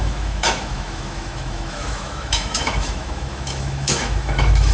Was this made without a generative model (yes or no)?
no